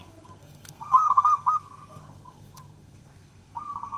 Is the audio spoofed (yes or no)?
yes